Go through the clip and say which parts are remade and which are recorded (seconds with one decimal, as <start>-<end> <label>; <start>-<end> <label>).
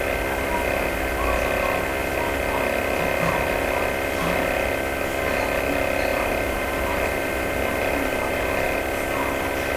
0.0-6.1 recorded; 6.1-8.8 remade; 8.8-9.8 recorded